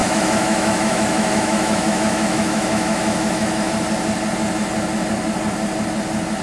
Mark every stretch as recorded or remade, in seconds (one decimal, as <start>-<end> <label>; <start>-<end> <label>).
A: 0.0-3.7 remade; 3.7-6.4 recorded

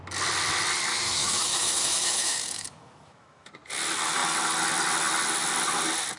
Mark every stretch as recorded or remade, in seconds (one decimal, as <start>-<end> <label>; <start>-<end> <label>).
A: 0.0-0.9 recorded; 0.9-3.5 remade; 3.5-6.2 recorded